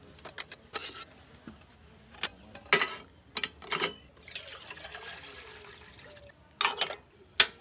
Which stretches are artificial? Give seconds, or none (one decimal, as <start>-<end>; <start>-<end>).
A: none